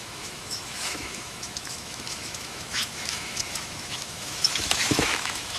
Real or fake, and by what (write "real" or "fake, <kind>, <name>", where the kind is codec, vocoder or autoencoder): fake, autoencoder, DAC-VAE